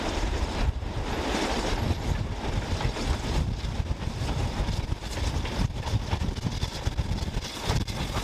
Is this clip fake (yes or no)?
no